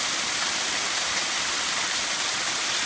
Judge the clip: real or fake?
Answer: real